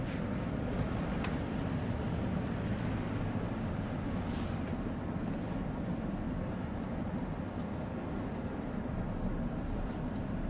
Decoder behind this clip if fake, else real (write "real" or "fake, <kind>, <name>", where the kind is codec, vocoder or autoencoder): fake, vocoder, BigVGAN v2